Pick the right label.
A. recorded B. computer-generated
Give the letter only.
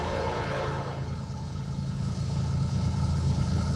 B